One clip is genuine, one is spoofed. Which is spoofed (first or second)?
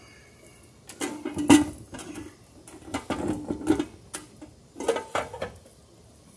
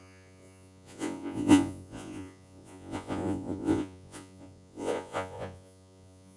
second